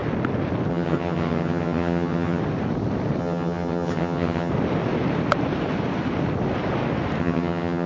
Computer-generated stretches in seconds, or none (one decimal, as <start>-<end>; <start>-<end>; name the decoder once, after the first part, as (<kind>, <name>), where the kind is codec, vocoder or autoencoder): 0.7-2.4 (vocoder, HiFi-GAN); 3.2-4.5; 7.2-7.9